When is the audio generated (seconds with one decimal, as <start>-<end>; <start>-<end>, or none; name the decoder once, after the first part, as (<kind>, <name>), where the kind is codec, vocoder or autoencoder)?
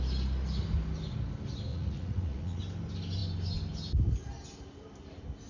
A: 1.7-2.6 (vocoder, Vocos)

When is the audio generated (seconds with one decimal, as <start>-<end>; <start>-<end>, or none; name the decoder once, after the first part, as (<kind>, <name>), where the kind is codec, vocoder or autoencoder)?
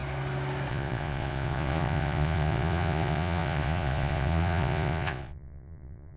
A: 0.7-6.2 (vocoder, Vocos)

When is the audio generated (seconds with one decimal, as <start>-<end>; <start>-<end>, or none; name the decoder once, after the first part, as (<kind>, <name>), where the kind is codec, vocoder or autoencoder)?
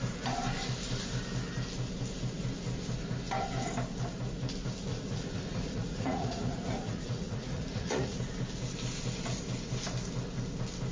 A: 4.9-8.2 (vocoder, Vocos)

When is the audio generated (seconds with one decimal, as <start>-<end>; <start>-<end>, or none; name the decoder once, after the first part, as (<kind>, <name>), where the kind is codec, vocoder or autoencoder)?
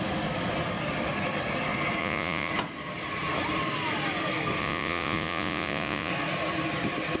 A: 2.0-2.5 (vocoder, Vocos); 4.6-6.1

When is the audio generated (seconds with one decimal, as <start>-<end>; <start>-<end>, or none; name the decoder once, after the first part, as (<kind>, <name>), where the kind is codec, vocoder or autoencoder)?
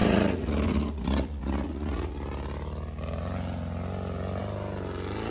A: 0.0-2.1 (vocoder, Vocos)